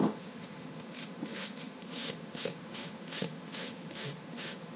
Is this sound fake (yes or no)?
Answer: yes